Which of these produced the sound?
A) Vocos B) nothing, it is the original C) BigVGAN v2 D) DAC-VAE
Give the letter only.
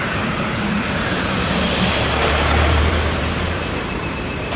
C